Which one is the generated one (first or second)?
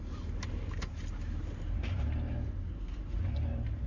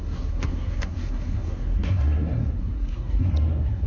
second